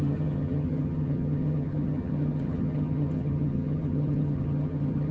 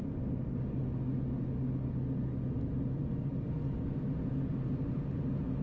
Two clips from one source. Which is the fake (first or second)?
first